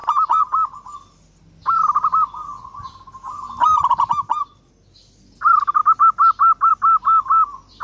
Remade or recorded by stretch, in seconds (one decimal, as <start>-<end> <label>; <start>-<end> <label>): 0.0-7.8 recorded